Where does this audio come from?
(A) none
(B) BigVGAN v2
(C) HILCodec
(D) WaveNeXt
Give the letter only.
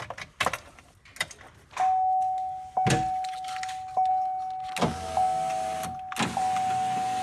A